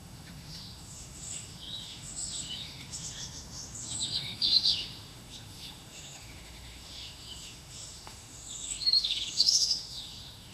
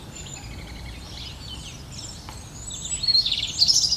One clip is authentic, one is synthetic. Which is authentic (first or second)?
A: second